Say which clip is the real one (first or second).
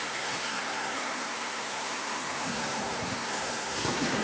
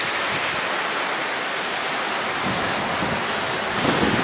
second